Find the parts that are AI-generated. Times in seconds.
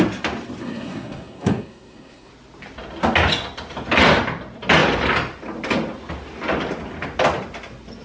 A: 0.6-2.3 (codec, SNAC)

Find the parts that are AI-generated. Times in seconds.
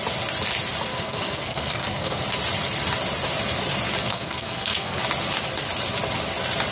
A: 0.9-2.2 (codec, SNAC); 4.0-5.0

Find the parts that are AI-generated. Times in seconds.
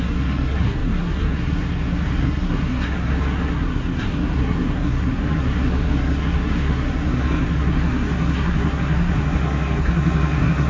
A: 0.0-10.7 (codec, SNAC)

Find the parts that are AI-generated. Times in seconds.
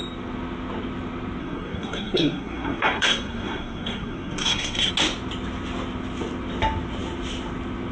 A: 1.4-4.9 (codec, SNAC)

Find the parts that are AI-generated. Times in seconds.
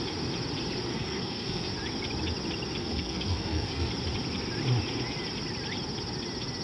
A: 0.9-1.7 (codec, SNAC); 2.8-3.9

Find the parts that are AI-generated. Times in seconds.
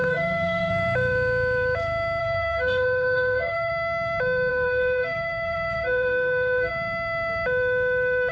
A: 0.0-0.7 (codec, SNAC); 2.2-3.7; 4.5-6.7